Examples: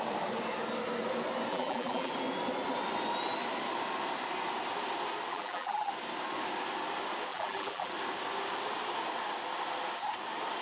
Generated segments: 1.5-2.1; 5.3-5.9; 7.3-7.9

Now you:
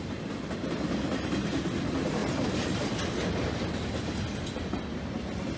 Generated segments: none

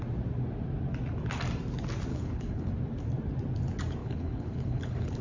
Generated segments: 2.1-2.7; 4.0-5.2

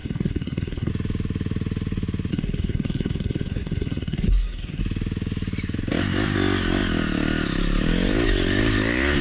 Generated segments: 0.0-0.9; 2.3-4.8

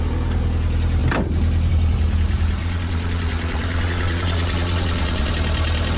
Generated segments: 2.6-5.3